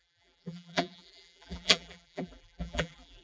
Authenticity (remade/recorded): remade